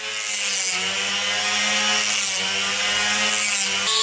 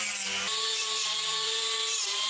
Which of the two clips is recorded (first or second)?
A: first